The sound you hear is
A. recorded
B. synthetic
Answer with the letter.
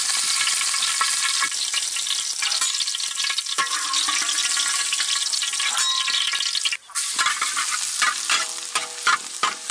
A